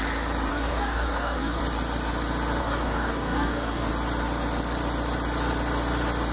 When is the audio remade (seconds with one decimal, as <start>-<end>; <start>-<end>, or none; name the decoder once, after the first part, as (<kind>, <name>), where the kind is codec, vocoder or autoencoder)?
0.5-1.6 (codec, DAC); 2.6-3.9